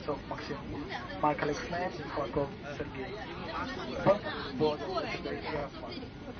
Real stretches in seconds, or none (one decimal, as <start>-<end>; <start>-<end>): 1.1-1.6; 2.3-3.4; 5.0-6.4